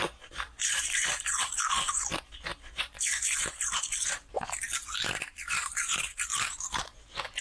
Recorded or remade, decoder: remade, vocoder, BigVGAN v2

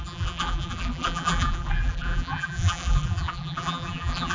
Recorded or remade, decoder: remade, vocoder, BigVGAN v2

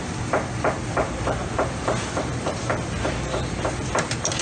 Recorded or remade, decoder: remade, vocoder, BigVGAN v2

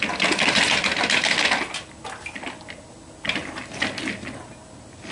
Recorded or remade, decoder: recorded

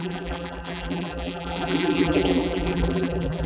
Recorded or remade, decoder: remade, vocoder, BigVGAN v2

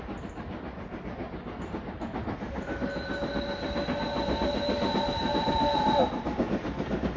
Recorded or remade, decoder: recorded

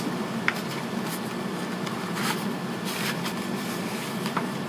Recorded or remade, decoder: remade, vocoder, BigVGAN v2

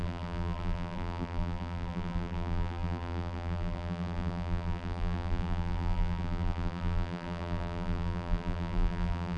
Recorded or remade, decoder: remade, vocoder, BigVGAN v2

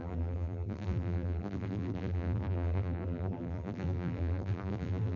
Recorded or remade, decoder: remade, vocoder, BigVGAN v2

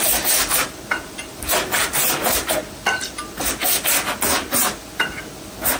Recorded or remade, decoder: recorded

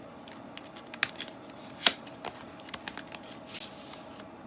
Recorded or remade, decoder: recorded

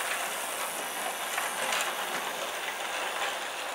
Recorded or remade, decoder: recorded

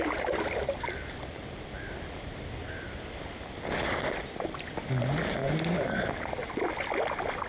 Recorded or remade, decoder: recorded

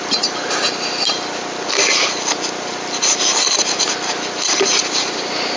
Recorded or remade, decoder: recorded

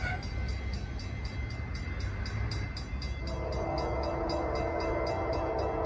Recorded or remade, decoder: recorded